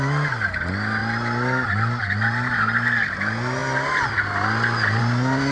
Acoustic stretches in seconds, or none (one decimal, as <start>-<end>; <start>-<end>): 0.0-5.5